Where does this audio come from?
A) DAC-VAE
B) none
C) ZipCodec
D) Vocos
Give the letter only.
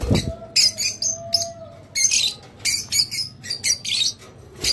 B